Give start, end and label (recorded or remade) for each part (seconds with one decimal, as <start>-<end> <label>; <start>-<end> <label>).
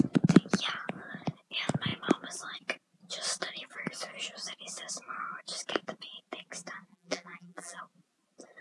0.0-6.9 recorded; 6.9-7.8 remade; 7.8-8.6 recorded